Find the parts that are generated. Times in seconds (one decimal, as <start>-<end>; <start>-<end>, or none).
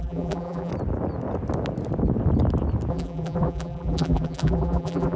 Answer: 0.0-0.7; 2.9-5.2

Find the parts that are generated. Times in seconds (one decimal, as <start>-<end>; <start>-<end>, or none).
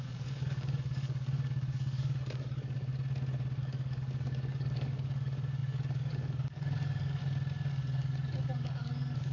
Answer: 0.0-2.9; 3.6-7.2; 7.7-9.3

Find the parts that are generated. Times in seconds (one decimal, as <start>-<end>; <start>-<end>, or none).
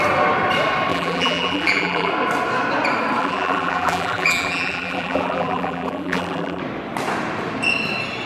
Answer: 0.9-2.1; 3.2-6.6